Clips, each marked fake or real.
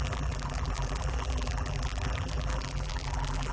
fake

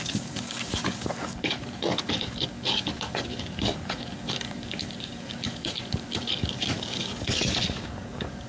fake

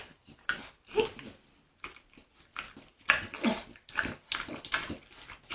real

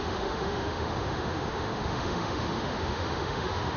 fake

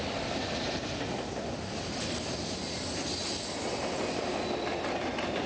real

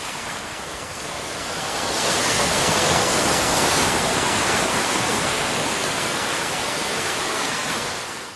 fake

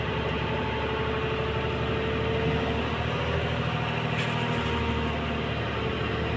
real